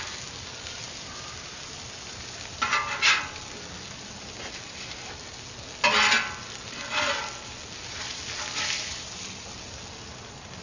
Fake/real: real